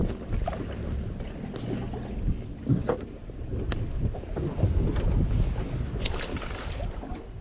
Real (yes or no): yes